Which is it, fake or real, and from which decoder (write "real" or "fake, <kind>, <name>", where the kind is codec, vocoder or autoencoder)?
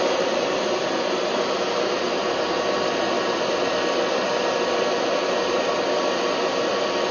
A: fake, vocoder, BigVGAN v2